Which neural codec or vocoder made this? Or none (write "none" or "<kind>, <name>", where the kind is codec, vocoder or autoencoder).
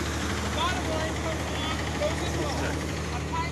none